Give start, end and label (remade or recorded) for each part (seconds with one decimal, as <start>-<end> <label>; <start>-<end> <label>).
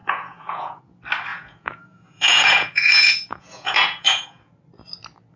0.0-0.8 remade; 0.8-1.3 recorded; 1.3-4.5 remade; 4.5-5.4 recorded